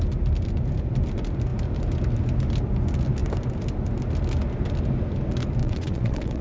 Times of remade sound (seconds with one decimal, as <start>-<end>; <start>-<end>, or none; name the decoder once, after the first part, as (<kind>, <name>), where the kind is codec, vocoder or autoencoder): 5.6-6.4 (vocoder, WaveNeXt)